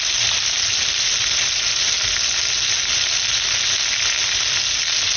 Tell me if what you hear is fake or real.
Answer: real